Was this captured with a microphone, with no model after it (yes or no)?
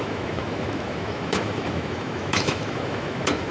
no